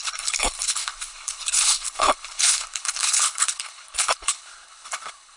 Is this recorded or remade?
remade